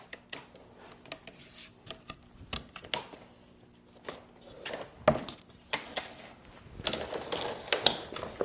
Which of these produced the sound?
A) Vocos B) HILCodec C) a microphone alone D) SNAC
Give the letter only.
C